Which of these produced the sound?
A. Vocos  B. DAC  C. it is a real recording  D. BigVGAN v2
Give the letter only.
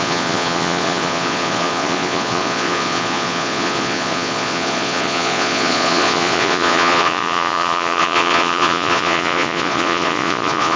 A